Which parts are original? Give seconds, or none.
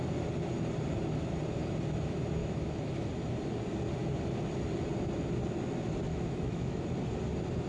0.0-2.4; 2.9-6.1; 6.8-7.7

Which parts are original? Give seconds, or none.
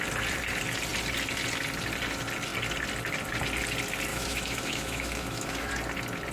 0.0-4.1; 5.7-6.3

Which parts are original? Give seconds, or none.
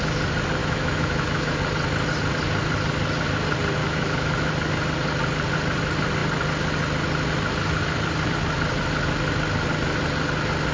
0.0-0.6; 1.6-3.8; 4.5-10.7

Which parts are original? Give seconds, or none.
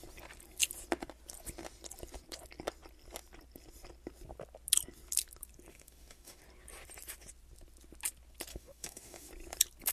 0.0-5.7; 6.4-8.5; 9.3-9.9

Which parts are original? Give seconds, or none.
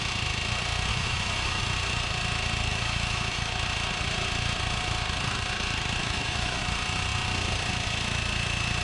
0.0-0.9; 1.6-2.7; 3.5-6.0; 6.6-8.8